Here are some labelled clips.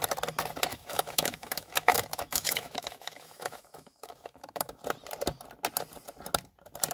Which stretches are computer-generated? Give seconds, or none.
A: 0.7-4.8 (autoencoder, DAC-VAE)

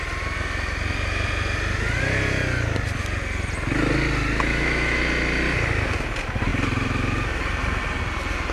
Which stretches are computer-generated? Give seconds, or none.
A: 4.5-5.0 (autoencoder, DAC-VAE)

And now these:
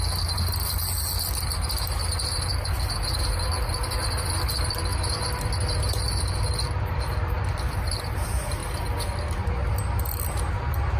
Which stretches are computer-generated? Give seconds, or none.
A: none

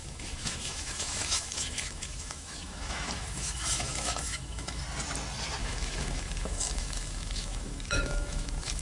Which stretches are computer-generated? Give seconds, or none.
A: 0.0-4.8 (autoencoder, DAC-VAE); 5.6-8.8

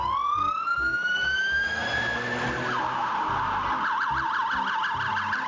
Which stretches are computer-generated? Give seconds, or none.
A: 0.9-1.8 (autoencoder, DAC-VAE)

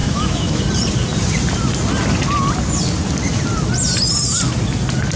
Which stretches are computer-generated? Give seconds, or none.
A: 0.0-0.6 (autoencoder, DAC-VAE)

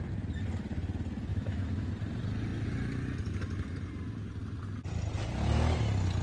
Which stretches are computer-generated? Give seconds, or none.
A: 1.3-1.9 (autoencoder, DAC-VAE)